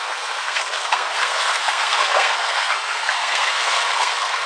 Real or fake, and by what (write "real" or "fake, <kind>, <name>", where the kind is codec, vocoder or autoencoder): fake, codec, SNAC